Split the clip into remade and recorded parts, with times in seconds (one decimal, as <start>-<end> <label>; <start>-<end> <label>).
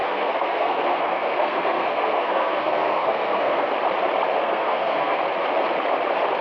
0.0-3.7 remade; 3.7-4.4 recorded; 4.4-5.2 remade; 5.2-6.4 recorded